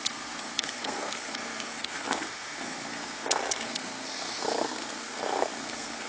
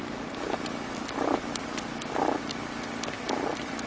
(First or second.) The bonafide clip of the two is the second